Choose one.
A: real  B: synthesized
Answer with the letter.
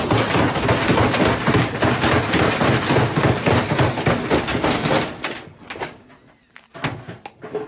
A